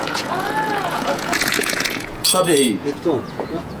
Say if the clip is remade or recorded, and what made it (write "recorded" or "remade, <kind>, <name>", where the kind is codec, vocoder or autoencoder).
remade, vocoder, Vocos